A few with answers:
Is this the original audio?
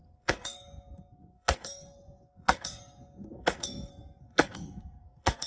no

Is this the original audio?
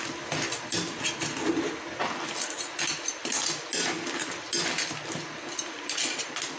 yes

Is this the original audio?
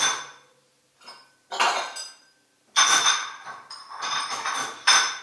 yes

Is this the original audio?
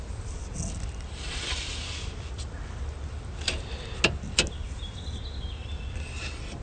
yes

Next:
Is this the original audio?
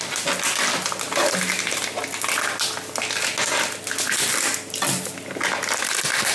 yes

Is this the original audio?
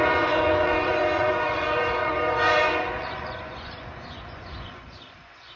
no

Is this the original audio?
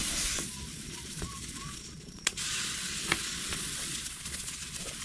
no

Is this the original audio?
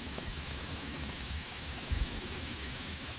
no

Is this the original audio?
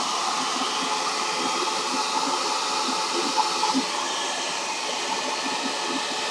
no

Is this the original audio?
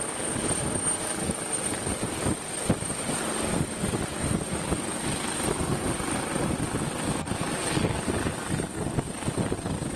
yes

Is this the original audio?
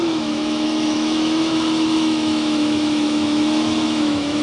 no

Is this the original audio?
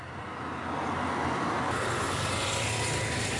yes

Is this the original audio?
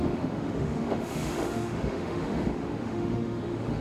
no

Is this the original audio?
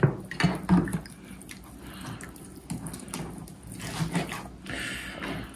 yes